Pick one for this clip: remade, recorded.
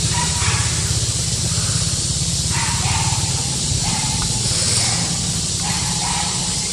recorded